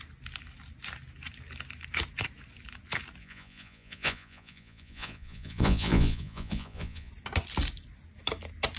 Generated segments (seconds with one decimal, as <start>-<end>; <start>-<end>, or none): 3.2-7.1